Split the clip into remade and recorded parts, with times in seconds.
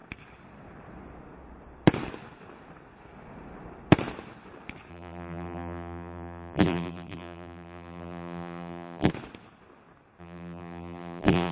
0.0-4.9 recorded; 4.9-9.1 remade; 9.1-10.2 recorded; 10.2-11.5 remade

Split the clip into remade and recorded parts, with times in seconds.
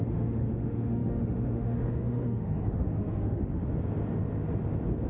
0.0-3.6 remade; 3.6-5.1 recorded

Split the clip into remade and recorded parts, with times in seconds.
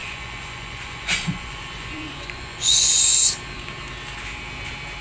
0.0-3.0 remade; 3.0-5.0 recorded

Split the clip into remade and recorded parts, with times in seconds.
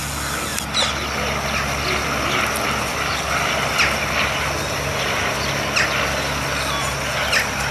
0.0-7.7 recorded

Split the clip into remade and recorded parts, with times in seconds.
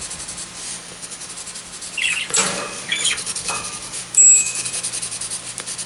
0.0-0.7 recorded; 0.7-1.3 remade; 1.3-2.4 recorded; 2.4-4.7 remade; 4.7-5.9 recorded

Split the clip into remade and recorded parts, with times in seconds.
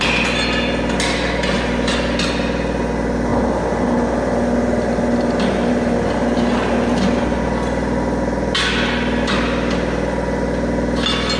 0.0-11.4 recorded